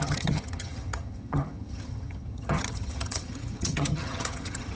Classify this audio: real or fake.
fake